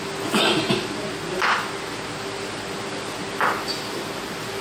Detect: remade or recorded recorded